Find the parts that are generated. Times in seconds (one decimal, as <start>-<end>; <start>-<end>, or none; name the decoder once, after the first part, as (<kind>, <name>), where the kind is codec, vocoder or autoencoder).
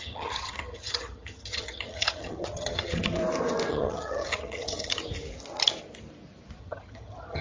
0.0-3.2 (vocoder, HiFi-GAN); 3.7-5.0; 6.6-7.4